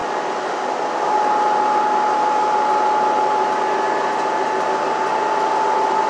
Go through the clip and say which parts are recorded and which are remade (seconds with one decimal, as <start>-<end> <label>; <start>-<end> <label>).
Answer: 0.0-6.1 recorded